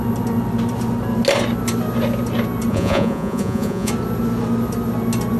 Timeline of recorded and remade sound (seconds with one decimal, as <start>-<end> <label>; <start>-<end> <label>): 0.0-2.7 recorded; 2.7-3.9 remade; 3.9-5.4 recorded